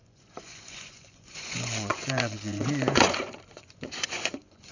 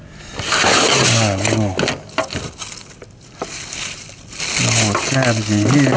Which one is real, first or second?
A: second